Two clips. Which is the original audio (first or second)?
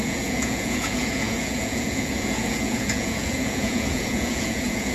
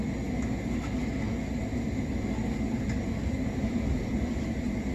second